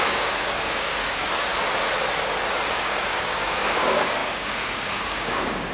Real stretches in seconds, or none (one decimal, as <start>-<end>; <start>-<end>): 1.5-2.7